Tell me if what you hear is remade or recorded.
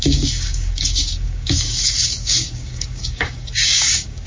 remade